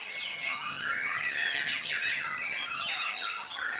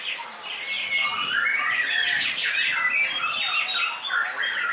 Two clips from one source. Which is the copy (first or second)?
first